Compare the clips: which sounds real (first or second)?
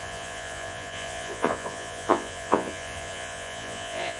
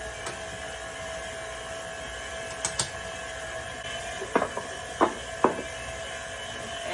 second